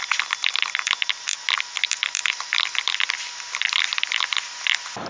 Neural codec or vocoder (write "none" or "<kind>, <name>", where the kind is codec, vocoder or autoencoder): none